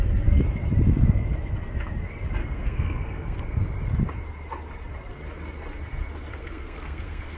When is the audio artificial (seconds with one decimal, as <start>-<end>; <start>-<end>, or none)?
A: 2.4-3.8; 6.3-7.4